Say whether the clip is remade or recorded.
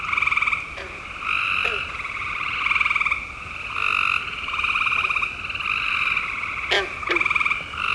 recorded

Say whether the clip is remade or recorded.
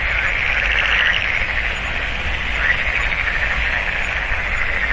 recorded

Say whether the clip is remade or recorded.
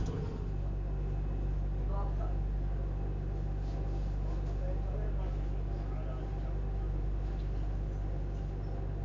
recorded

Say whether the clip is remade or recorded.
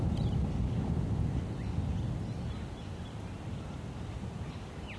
recorded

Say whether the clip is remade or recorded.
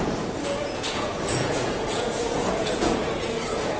remade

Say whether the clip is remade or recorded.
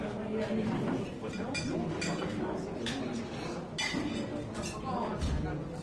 recorded